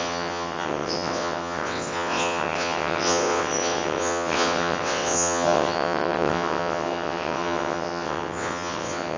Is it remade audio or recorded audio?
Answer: remade